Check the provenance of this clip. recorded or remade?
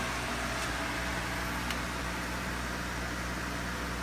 recorded